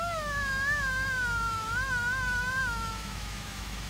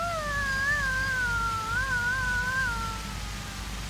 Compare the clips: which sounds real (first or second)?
second